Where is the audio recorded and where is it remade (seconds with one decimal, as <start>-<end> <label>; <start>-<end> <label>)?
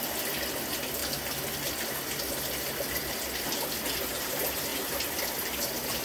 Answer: 0.0-6.0 recorded